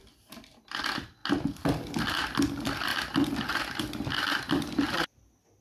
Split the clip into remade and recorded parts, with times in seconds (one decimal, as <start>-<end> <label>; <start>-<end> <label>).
0.0-5.6 recorded

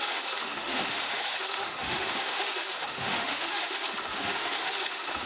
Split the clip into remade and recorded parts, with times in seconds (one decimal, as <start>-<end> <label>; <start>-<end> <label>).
0.0-5.3 remade

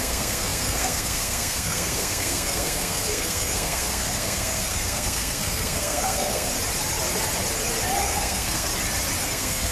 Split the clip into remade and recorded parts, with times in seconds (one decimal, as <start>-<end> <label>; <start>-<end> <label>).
0.0-6.5 remade; 6.5-8.0 recorded; 8.0-8.7 remade; 8.7-9.2 recorded; 9.2-9.7 remade

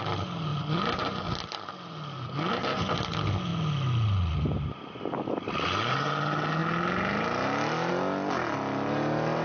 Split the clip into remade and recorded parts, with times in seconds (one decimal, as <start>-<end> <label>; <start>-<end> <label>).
0.0-9.4 recorded

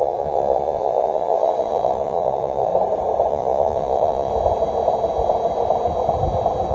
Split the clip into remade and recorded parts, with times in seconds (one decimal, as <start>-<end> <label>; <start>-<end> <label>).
0.0-2.7 remade; 2.7-3.3 recorded; 3.3-4.3 remade; 4.3-6.7 recorded

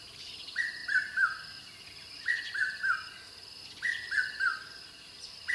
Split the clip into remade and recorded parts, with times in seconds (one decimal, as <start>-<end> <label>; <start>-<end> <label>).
0.0-5.5 recorded

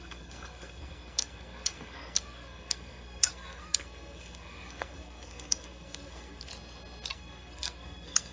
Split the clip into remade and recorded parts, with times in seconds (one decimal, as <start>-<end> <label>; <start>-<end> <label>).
0.0-6.5 remade; 6.5-7.1 recorded; 7.1-8.3 remade

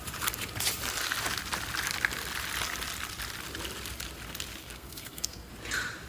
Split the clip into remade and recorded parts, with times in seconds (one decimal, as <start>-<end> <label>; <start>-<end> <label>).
0.0-4.6 recorded; 4.6-5.5 remade; 5.5-6.1 recorded